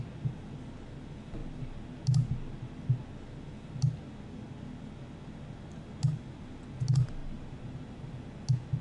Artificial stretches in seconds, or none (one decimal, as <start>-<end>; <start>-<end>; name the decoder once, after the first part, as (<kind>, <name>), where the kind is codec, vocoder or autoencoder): 7.2-8.1 (vocoder, BigVGAN v2)